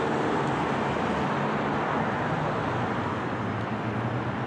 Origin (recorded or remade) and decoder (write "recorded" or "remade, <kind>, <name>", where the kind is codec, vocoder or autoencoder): recorded